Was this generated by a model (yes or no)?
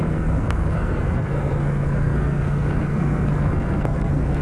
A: yes